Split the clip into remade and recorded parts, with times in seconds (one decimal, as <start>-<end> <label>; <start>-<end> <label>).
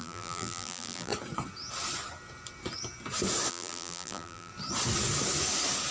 0.0-1.1 remade; 1.1-3.5 recorded; 3.5-4.5 remade; 4.5-5.9 recorded